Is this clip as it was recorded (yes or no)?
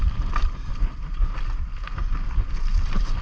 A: yes